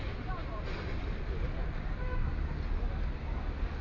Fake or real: real